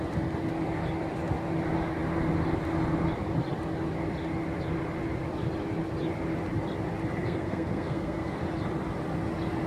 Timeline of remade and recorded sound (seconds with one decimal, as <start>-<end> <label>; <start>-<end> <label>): 0.0-7.2 recorded; 7.2-8.4 remade; 8.4-9.7 recorded